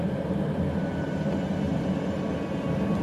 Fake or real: real